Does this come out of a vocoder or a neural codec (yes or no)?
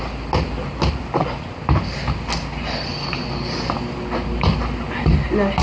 no